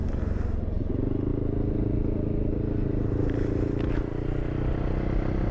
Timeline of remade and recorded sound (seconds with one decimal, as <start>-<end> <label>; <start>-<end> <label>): 0.0-5.5 recorded